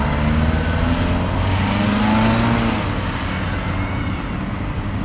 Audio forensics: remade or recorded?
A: recorded